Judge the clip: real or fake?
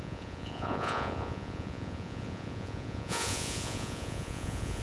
fake